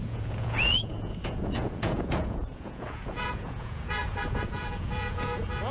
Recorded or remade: remade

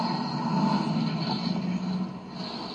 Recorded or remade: recorded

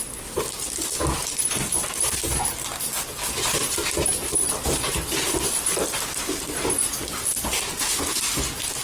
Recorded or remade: recorded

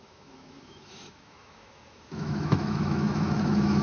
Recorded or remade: remade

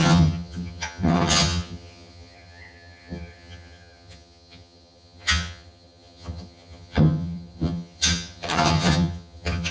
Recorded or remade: remade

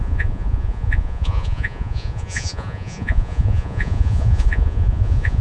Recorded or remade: remade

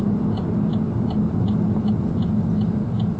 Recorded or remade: recorded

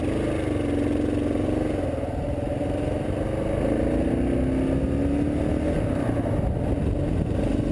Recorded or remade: recorded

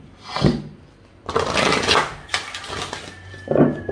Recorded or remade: recorded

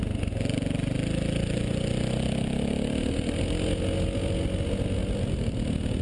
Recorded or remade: recorded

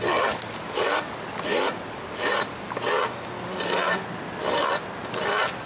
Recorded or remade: recorded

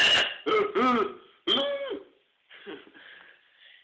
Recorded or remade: recorded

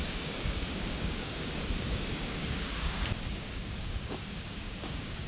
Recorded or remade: remade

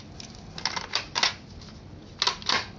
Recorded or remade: recorded